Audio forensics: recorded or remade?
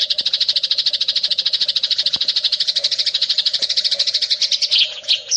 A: remade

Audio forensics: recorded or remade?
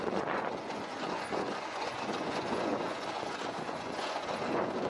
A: remade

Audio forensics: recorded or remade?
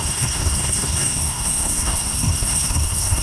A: remade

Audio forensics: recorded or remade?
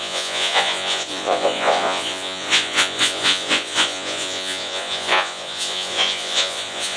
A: remade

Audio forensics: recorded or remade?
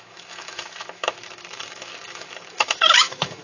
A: remade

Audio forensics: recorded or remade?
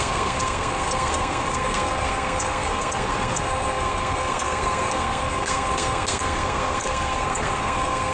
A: remade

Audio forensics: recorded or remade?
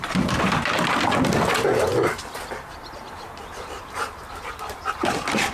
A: recorded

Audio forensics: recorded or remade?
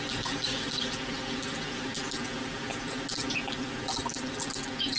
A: recorded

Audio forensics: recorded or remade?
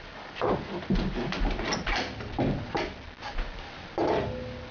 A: recorded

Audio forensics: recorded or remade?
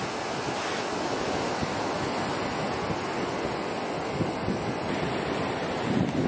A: recorded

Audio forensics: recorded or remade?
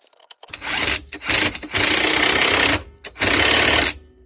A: recorded